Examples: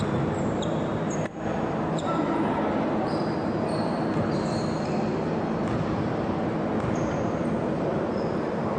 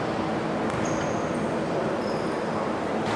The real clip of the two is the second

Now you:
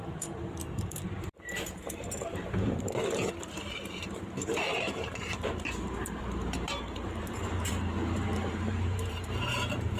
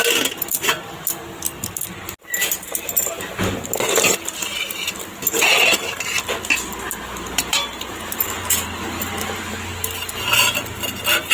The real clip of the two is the second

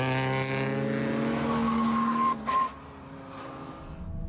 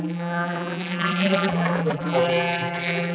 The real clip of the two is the first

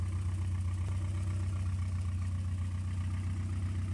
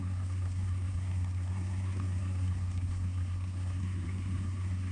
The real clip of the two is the first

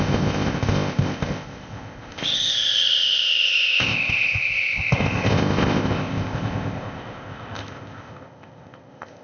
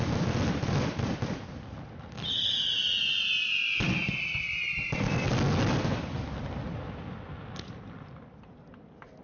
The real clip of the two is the second